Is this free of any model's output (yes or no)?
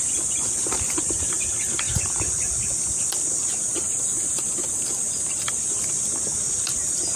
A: yes